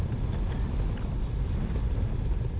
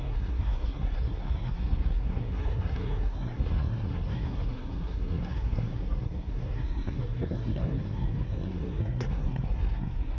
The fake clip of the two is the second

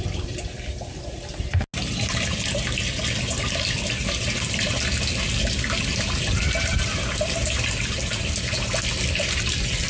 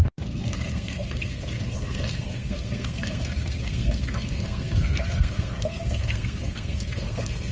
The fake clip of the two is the second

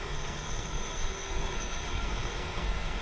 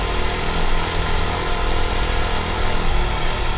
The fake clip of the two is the first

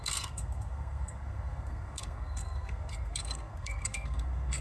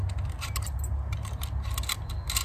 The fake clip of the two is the first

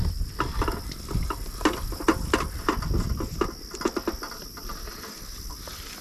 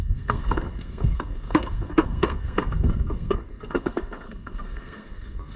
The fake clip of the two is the second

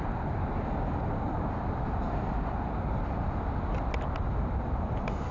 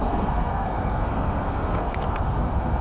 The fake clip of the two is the second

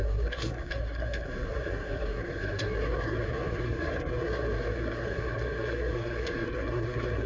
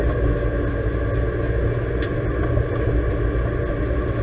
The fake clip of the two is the first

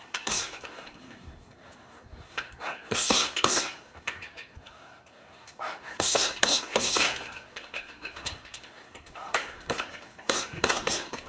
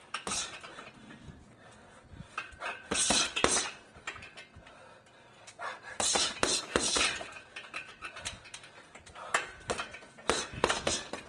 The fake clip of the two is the first